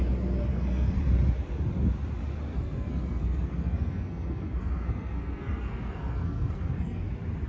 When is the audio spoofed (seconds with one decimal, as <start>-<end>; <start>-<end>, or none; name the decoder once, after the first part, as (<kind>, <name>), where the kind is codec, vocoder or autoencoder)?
0.5-1.0 (codec, SNAC); 2.5-7.0